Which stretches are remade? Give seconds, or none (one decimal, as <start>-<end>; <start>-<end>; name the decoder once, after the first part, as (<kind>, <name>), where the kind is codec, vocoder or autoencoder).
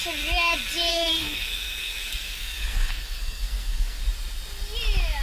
0.9-4.0 (codec, SNAC)